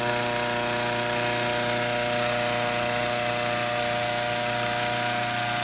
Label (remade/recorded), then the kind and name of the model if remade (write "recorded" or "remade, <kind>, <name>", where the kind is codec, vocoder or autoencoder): recorded